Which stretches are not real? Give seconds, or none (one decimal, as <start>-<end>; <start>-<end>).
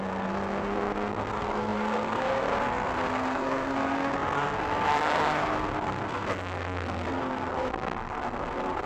0.0-8.9